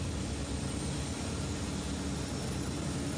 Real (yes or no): yes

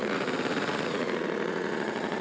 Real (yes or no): no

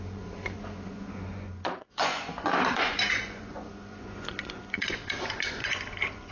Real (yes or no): no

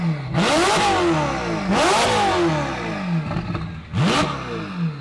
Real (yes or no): yes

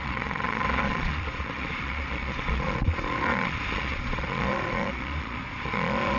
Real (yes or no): no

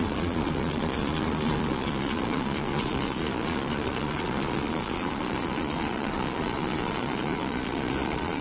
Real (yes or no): no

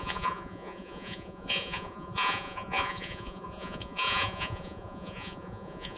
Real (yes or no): no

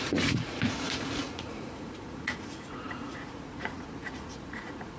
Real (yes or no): no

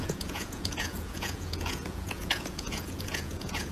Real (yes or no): no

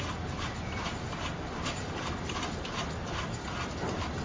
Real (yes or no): yes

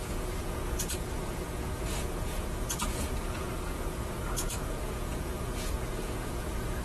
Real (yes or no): no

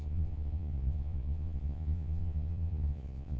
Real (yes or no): no